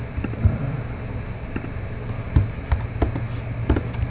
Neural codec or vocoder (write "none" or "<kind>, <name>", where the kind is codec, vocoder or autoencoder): none